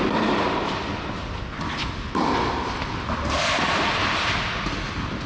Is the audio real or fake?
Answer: real